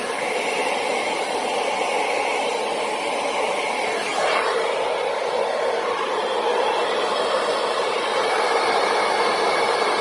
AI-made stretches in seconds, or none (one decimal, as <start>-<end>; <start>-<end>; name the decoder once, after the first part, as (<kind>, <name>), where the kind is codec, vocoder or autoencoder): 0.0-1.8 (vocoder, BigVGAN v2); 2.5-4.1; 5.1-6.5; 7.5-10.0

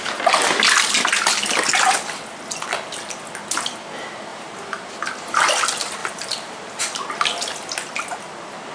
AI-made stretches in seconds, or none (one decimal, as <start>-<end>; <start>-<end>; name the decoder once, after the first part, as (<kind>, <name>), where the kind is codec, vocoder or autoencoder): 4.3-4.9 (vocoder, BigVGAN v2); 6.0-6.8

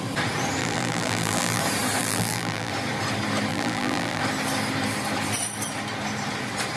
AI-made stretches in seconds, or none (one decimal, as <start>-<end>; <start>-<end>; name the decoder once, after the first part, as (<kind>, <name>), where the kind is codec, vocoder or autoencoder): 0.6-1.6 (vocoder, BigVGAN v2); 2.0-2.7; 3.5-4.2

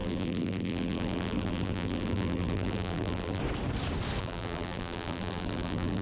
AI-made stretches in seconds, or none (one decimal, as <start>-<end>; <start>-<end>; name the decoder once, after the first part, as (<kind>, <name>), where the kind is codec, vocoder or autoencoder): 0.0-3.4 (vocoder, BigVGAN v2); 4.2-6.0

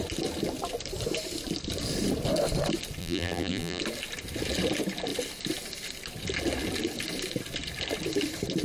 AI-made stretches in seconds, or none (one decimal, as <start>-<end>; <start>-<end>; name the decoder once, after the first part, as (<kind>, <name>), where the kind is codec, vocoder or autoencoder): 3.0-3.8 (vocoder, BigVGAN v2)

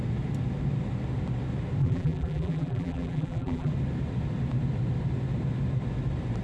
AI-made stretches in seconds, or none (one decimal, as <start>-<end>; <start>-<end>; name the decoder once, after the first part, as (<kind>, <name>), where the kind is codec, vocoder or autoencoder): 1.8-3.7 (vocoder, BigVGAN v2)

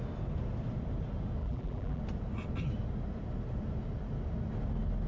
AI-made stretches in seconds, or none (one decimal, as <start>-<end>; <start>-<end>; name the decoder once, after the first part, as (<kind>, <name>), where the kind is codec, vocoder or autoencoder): 1.4-2.0 (vocoder, BigVGAN v2)